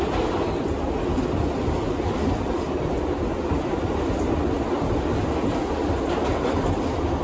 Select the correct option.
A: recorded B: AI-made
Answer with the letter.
A